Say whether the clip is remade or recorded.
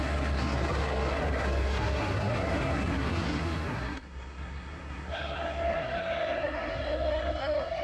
remade